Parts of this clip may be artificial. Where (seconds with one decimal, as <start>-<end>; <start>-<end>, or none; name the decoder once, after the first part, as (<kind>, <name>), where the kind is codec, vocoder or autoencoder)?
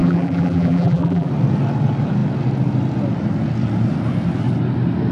0.0-1.3 (vocoder, BigVGAN v2)